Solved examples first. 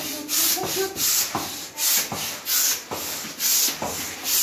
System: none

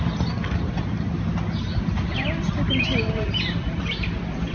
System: none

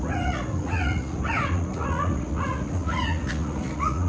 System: vocoder, Vocos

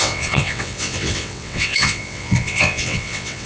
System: vocoder, WaveNeXt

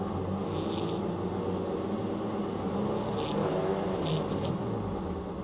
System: none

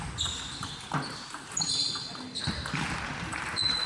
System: none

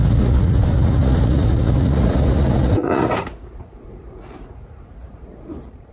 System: vocoder, Vocos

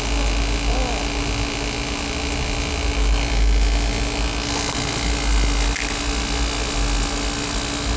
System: none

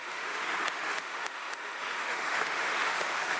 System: autoencoder, DAC-VAE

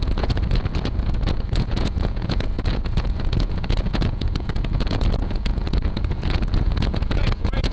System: vocoder, Vocos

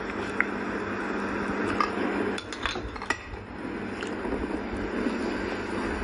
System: none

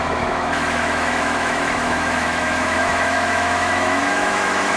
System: autoencoder, DAC-VAE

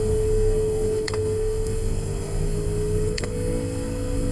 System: codec, SNAC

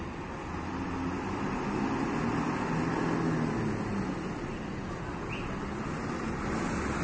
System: none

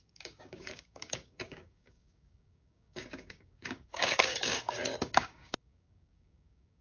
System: codec, DAC